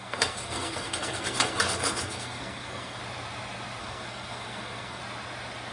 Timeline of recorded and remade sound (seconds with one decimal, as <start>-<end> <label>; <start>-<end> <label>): 0.0-3.0 remade; 3.0-3.8 recorded; 3.8-5.0 remade; 5.0-5.7 recorded